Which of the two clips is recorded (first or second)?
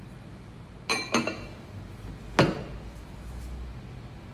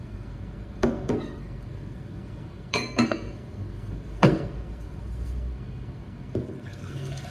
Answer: first